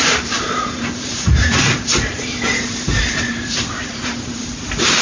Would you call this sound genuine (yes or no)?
no